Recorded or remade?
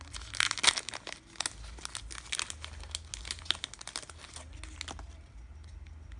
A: recorded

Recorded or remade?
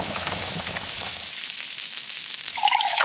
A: remade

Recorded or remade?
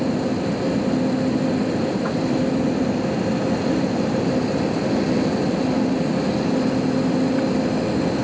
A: recorded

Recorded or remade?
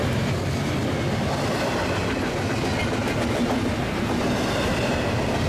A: recorded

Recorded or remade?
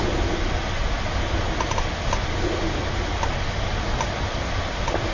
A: recorded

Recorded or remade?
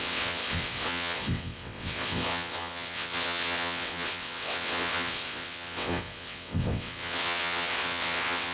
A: remade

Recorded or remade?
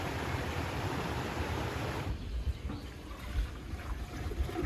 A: remade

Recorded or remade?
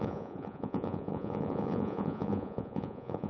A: remade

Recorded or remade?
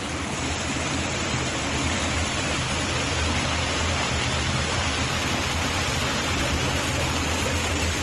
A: recorded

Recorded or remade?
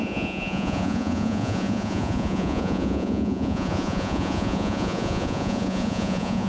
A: remade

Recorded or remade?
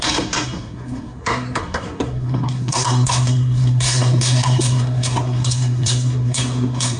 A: remade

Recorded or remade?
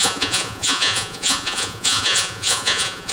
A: remade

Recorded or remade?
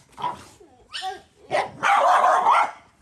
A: recorded